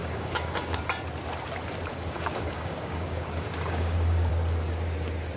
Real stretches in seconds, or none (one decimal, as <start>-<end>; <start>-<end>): 0.8-1.9; 4.3-5.4

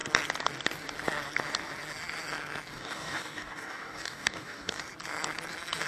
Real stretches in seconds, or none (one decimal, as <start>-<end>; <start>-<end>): 0.0-2.7; 4.8-5.9

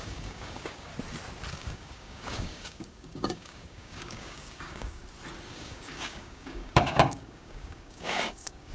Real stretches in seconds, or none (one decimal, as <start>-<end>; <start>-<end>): 0.9-1.5; 5.0-5.5

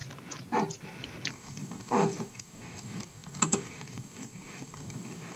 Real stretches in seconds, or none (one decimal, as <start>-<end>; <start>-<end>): 0.0-1.3

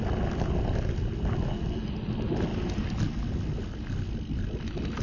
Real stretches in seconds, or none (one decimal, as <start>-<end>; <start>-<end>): 0.0-5.0

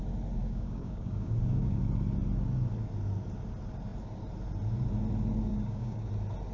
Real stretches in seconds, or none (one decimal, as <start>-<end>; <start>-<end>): 0.0-0.4; 1.8-5.5; 6.1-6.5

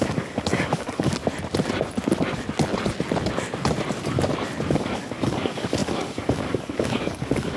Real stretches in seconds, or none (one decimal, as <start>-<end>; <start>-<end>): 1.2-4.7

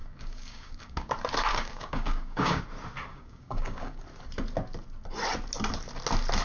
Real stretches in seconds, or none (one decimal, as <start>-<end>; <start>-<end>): 1.1-1.5; 2.6-3.1; 4.0-6.4